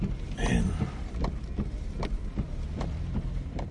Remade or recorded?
remade